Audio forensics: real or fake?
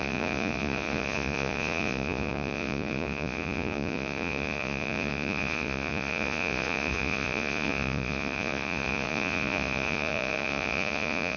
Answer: fake